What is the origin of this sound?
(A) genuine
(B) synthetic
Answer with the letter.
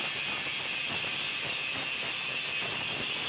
A